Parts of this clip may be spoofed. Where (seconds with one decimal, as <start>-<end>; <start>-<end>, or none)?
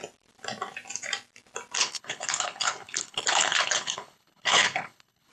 1.8-5.3